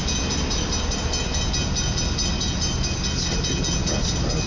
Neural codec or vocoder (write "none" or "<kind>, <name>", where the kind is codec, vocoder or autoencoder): none